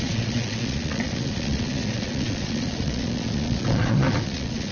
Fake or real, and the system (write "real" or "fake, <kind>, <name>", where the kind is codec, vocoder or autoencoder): fake, vocoder, Vocos